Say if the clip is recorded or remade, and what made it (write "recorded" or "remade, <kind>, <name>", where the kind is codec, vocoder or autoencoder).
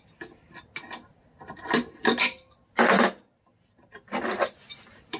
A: recorded